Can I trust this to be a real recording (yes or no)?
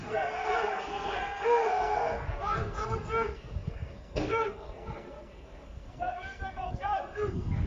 no